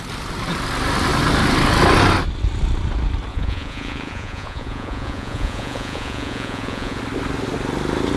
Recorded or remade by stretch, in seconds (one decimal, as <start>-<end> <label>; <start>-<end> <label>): 0.0-3.3 recorded; 3.3-7.0 remade; 7.0-8.2 recorded